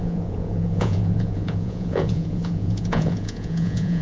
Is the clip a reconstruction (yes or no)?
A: yes